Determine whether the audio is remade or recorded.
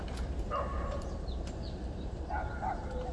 remade